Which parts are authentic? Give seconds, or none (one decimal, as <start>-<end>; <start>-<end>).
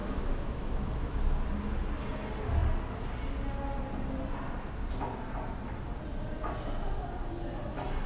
1.2-8.1